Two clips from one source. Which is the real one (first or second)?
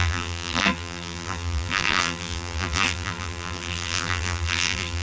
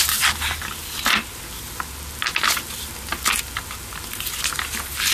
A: second